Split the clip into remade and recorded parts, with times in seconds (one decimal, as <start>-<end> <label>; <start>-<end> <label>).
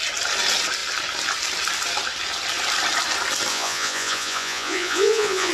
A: 0.0-3.5 recorded; 3.5-5.5 remade